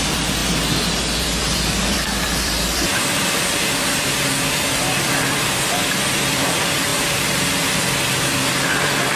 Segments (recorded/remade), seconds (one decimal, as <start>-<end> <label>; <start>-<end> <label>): 0.0-0.4 remade; 0.4-1.2 recorded; 1.2-9.2 remade